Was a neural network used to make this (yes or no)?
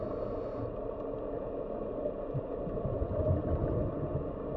no